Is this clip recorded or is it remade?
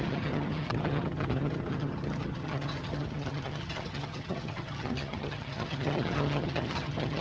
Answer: remade